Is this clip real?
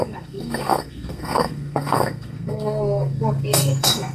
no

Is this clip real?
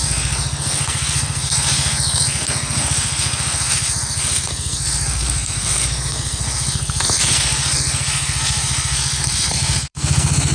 no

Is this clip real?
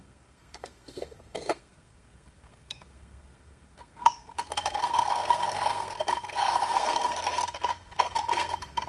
no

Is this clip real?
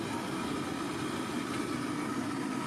yes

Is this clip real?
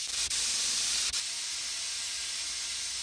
yes